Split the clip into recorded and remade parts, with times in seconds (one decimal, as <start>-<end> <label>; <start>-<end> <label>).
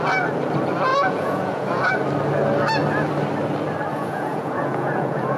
0.0-0.9 recorded; 0.9-1.9 remade; 1.9-3.9 recorded; 3.9-5.4 remade